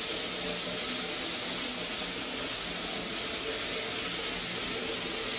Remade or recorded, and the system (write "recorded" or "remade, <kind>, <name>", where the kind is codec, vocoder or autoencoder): recorded